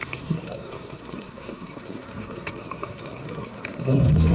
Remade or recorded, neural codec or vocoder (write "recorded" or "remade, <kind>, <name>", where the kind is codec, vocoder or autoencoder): remade, codec, SNAC